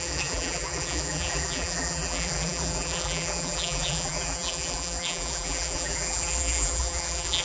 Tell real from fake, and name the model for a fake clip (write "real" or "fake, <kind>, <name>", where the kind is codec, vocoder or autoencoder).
fake, vocoder, BigVGAN v2